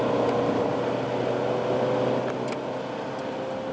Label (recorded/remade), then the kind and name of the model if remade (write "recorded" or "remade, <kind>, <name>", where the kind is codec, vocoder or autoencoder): recorded